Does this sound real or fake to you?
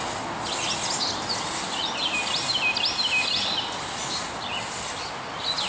real